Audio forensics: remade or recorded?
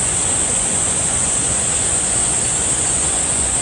remade